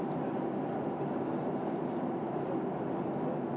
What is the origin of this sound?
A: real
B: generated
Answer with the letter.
A